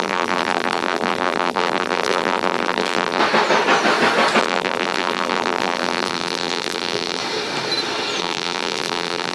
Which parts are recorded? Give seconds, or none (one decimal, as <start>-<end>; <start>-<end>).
3.2-4.4; 7.2-8.2